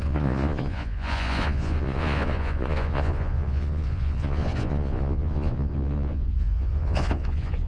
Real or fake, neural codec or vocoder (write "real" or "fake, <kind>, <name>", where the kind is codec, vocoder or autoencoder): fake, vocoder, Vocos